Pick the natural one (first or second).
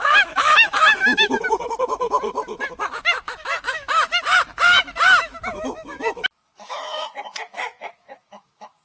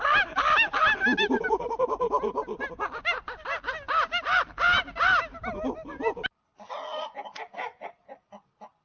second